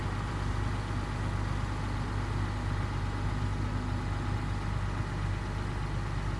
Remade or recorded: recorded